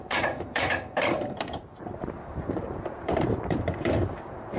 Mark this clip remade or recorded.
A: remade